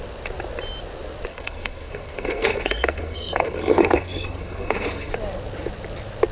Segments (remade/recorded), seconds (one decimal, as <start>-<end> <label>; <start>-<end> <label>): 0.0-1.3 recorded; 1.3-5.1 remade; 5.1-6.3 recorded